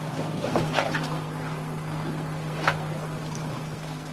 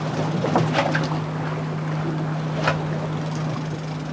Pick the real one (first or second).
second